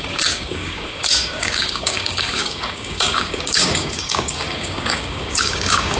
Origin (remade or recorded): remade